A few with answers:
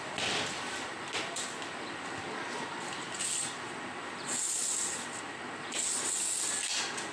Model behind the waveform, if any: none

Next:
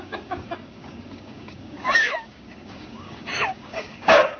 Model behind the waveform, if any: codec, DAC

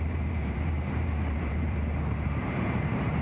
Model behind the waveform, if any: vocoder, BigVGAN v2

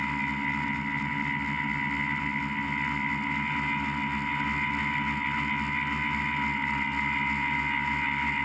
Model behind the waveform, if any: none